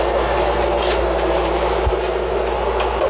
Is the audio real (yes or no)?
yes